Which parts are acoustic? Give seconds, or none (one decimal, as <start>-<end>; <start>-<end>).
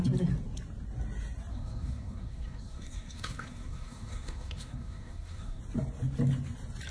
0.0-1.5; 5.6-6.9